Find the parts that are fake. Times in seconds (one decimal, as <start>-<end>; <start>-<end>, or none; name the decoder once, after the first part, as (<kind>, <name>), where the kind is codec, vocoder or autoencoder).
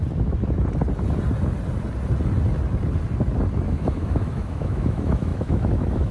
3.7-6.1 (autoencoder, DAC-VAE)